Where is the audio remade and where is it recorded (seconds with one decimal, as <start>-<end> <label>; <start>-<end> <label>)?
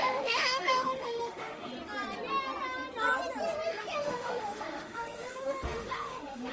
0.0-1.7 remade; 1.7-3.7 recorded; 3.7-6.5 remade